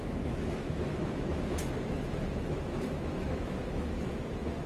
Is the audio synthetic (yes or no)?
yes